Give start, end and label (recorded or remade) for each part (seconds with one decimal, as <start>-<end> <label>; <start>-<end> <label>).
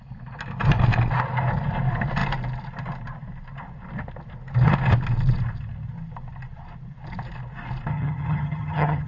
0.0-7.9 recorded; 7.9-9.1 remade